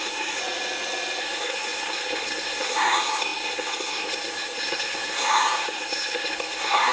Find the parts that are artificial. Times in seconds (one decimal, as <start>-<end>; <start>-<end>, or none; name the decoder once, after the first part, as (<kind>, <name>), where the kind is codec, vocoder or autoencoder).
0.0-0.4 (codec, SNAC); 1.2-6.9